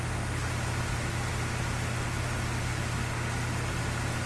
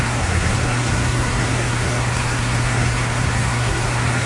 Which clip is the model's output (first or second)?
second